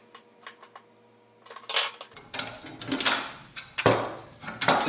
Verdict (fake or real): real